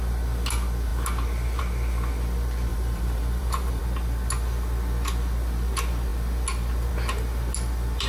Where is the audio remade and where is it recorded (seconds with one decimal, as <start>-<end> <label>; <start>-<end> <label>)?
0.0-2.7 recorded; 2.7-3.8 remade; 3.8-8.1 recorded